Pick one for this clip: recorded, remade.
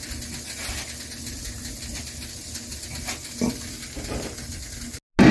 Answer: recorded